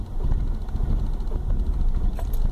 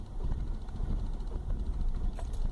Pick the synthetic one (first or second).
second